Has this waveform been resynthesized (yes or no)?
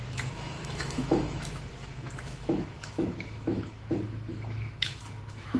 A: yes